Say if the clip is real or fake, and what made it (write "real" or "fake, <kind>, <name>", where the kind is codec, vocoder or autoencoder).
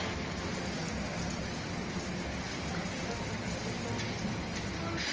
real